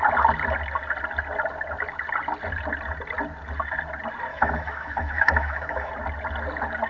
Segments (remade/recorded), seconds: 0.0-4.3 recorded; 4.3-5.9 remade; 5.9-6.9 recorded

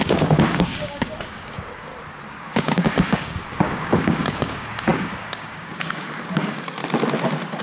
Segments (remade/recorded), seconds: 0.0-1.9 remade; 1.9-2.5 recorded; 2.5-6.8 remade; 6.8-7.6 recorded

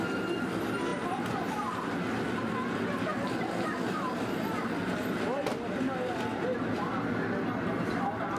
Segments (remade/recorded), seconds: 0.0-8.4 recorded

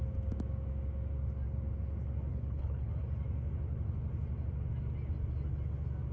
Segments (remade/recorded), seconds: 0.0-2.3 recorded; 2.3-2.9 remade; 2.9-6.1 recorded